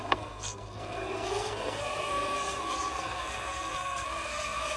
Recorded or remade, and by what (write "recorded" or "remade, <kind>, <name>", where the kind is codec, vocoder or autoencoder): remade, codec, SNAC